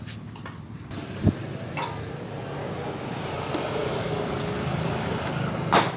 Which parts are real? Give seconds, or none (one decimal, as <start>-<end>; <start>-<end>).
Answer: 0.0-2.6; 3.2-6.0